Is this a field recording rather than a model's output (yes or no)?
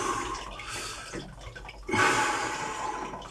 no